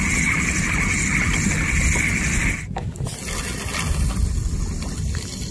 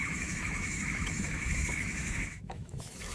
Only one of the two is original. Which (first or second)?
first